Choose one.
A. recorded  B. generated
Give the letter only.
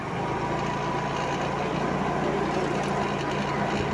A